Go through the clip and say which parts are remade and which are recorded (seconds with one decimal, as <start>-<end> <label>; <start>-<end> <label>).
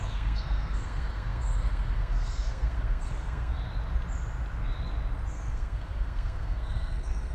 0.0-3.5 remade; 3.5-5.3 recorded; 5.3-7.3 remade